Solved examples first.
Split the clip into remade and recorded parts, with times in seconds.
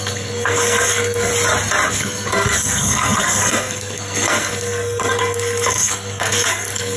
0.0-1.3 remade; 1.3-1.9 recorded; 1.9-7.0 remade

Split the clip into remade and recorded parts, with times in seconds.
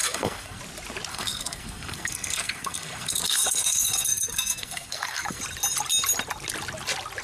0.0-0.6 remade; 0.6-1.1 recorded; 1.1-5.4 remade; 5.4-7.2 recorded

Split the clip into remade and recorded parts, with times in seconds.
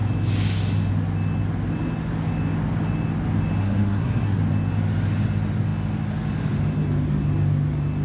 0.0-3.6 recorded; 3.6-4.4 remade; 4.4-8.0 recorded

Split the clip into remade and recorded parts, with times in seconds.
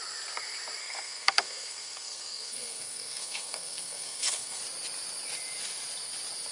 0.0-0.8 recorded; 0.8-4.6 remade; 4.6-6.5 recorded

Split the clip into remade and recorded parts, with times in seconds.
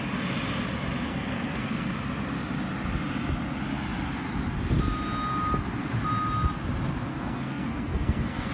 0.0-1.1 recorded; 1.1-1.9 remade; 1.9-7.1 recorded; 7.1-8.5 remade